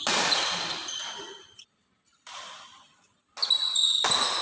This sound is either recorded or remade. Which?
recorded